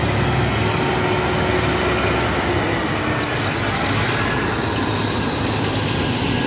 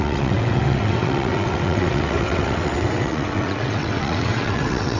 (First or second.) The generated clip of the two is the second